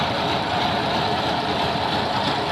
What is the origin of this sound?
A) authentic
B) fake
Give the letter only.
A